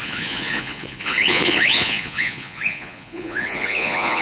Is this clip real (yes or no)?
no